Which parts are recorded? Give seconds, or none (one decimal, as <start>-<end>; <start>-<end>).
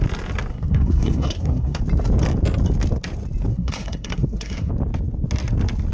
0.0-0.5; 1.8-3.5; 4.7-5.9